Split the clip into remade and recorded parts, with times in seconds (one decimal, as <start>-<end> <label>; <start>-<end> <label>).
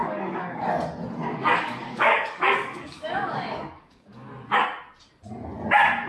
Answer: 0.0-0.8 remade; 0.8-1.3 recorded; 1.3-4.3 remade; 4.3-6.1 recorded